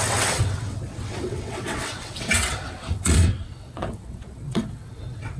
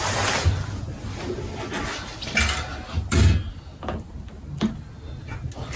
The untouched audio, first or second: second